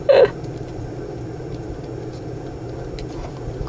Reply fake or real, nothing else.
real